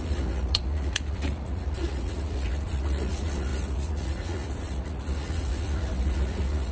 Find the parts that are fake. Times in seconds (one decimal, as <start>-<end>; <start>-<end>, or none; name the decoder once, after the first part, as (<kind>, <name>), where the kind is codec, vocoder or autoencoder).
0.0-6.7 (vocoder, Vocos)